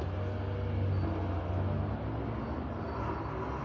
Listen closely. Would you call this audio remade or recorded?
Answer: recorded